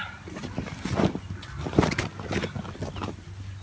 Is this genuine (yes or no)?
yes